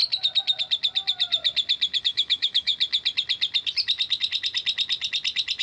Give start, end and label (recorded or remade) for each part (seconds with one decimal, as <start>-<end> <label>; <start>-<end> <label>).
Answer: 0.0-2.0 recorded; 2.0-2.7 remade; 2.7-5.6 recorded